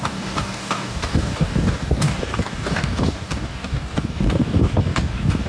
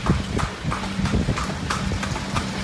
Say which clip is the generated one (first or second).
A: first